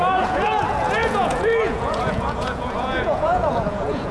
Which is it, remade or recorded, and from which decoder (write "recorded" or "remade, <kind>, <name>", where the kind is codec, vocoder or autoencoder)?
remade, vocoder, Vocos